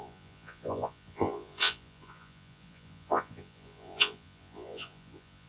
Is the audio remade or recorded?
remade